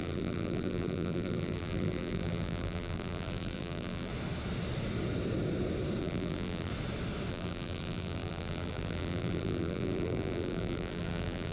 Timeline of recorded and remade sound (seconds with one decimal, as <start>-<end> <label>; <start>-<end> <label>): 0.0-4.1 remade; 4.1-6.0 recorded; 6.0-6.7 remade; 6.7-7.3 recorded; 7.3-11.5 remade